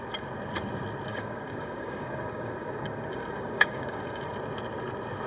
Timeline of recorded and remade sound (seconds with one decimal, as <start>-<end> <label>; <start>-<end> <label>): 0.0-1.1 recorded; 1.1-4.3 remade; 4.3-5.3 recorded